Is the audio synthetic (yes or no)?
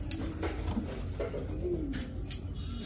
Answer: no